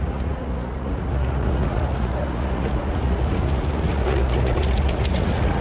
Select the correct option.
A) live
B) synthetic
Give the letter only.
B